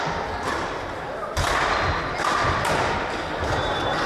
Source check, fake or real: real